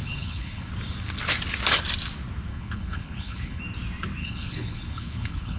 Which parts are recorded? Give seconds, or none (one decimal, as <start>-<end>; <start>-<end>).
0.7-2.5; 3.6-4.2